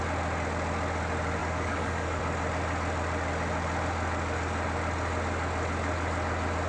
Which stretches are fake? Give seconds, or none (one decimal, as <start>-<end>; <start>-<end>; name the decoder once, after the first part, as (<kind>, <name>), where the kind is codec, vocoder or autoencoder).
1.4-2.2 (codec, DAC)